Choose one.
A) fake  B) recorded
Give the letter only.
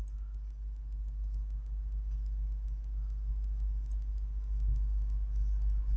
B